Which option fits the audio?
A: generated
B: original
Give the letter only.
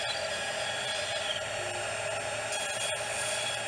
B